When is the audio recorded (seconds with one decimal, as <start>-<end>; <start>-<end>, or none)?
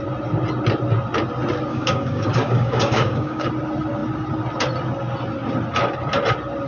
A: 0.0-1.7; 3.5-6.7